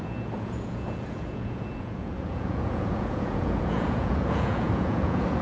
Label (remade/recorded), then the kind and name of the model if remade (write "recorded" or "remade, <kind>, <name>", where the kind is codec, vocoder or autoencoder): remade, vocoder, Vocos